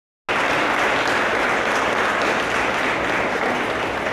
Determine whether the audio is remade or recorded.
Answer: recorded